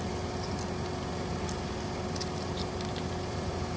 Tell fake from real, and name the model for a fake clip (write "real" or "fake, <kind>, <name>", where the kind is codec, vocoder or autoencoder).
real